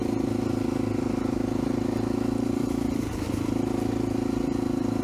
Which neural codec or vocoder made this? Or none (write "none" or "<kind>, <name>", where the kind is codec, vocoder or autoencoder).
none